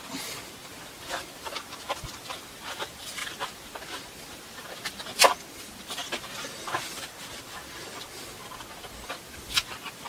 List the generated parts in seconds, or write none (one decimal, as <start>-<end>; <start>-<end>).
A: 0.6-2.0; 3.2-5.0